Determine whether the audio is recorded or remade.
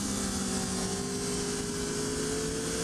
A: recorded